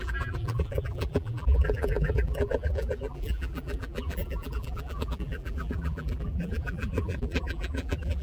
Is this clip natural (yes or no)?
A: no